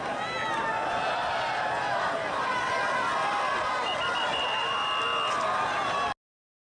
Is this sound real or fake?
real